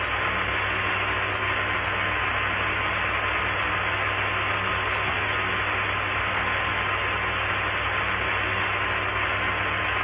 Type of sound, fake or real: real